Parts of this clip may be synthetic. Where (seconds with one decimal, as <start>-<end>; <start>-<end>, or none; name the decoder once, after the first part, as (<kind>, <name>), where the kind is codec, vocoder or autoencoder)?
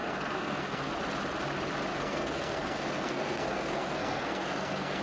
0.0-0.9 (codec, SNAC); 1.9-5.0